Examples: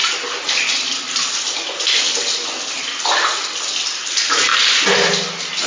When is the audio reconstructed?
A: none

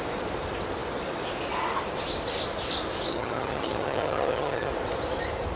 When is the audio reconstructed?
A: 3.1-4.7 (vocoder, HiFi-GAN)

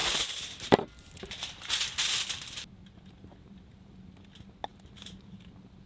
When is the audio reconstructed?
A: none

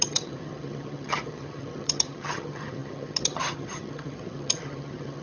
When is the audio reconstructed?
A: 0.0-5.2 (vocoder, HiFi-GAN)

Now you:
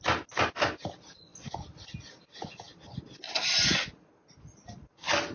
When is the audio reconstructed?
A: none

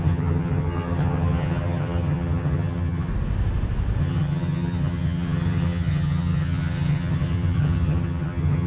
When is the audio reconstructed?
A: 0.0-3.1 (vocoder, HiFi-GAN); 4.0-8.7